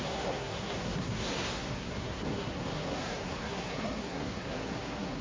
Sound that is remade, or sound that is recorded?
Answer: remade